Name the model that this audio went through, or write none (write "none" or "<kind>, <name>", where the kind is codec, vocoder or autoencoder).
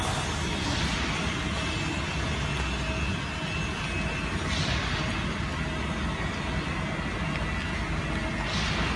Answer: none